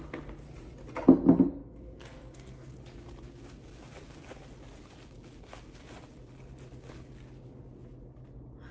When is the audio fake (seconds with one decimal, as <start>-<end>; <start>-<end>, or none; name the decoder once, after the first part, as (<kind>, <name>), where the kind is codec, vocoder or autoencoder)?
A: 1.6-2.7 (codec, SNAC)